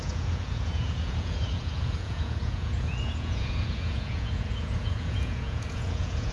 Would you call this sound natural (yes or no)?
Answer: no